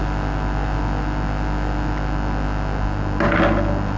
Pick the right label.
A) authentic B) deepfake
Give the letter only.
A